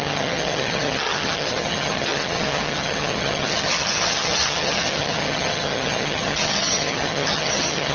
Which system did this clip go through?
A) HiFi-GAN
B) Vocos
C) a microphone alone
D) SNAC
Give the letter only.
A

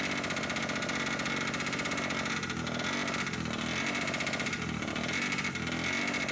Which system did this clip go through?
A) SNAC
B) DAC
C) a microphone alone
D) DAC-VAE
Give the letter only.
C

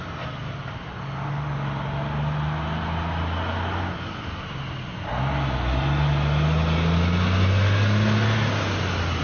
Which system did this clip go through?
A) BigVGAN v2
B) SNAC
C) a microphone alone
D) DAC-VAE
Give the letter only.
C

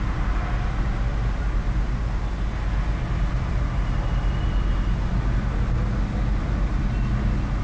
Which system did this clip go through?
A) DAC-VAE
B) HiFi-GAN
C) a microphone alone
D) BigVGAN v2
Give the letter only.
C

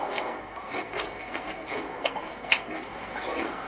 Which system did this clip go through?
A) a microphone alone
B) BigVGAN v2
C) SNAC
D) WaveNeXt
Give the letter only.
C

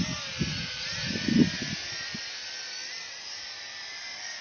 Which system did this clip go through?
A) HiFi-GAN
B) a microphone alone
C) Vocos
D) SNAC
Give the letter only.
B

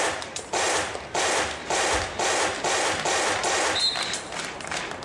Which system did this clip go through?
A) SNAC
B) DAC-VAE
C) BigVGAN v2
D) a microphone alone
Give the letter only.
D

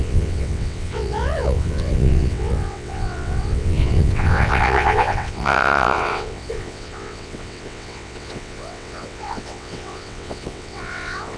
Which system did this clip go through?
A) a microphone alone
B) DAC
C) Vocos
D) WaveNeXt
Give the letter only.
D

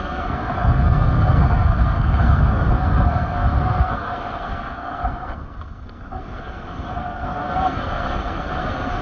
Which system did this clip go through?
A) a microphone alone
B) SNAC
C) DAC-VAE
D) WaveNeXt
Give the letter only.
B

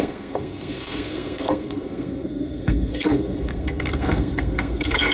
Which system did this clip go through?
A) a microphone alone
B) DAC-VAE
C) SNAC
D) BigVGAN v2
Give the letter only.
C